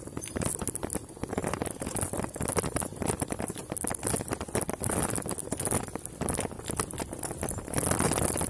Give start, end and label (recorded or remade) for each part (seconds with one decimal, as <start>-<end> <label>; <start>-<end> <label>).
0.0-8.5 recorded